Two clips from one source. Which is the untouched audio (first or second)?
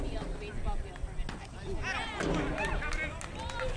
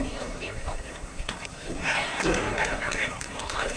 first